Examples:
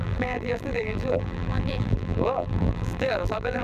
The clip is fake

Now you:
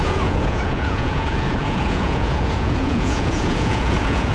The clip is fake